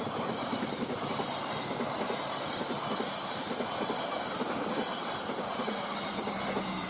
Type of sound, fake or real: real